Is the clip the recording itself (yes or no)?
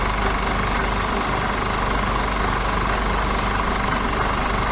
yes